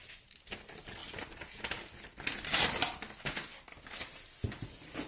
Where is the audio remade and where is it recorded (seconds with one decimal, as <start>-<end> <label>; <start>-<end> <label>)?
0.0-5.1 recorded